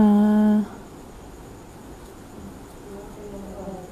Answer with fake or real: real